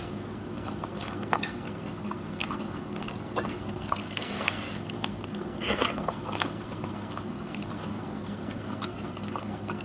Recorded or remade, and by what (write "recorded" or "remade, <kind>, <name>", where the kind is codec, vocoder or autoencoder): remade, codec, SNAC